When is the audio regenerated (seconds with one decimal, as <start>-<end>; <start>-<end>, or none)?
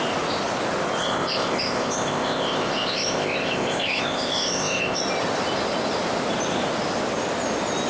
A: 1.0-5.0